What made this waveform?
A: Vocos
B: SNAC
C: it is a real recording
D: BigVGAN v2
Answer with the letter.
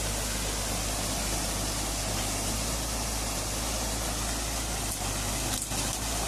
C